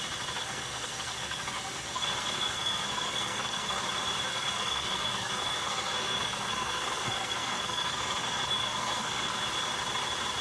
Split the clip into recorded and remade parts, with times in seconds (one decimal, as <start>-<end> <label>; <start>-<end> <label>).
0.0-0.4 recorded; 0.4-3.8 remade; 3.8-4.3 recorded; 4.3-9.4 remade; 9.4-10.4 recorded